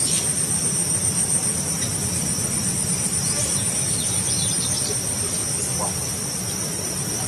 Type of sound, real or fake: fake